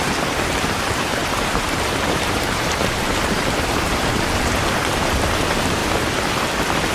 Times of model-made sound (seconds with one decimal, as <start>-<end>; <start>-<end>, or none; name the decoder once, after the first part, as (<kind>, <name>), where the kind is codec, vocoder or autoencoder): 0.0-5.8 (vocoder, BigVGAN v2)

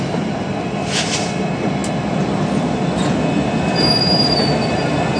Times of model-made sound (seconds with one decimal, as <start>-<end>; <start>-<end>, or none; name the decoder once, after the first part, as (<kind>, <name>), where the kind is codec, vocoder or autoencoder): 0.0-1.8 (vocoder, BigVGAN v2); 4.4-5.2

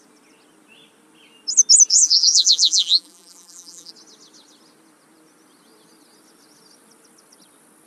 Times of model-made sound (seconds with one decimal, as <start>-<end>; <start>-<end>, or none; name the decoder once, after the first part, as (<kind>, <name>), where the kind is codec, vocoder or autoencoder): 1.9-3.9 (vocoder, BigVGAN v2)

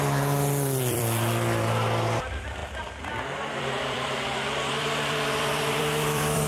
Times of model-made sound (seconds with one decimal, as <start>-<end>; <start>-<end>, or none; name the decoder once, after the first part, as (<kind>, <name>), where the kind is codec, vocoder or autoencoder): 0.0-6.5 (vocoder, BigVGAN v2)

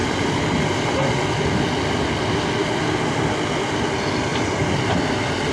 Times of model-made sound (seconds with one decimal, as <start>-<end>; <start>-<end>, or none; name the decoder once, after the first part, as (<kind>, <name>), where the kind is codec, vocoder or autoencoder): 0.0-1.2 (vocoder, BigVGAN v2); 2.6-3.2; 4.3-5.0

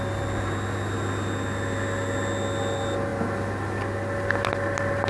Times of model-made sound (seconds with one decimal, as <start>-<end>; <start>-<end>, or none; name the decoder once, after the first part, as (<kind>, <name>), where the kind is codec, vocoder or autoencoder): none